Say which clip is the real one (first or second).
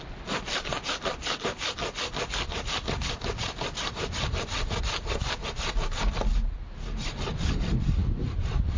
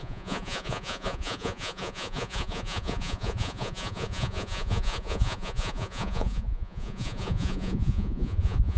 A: first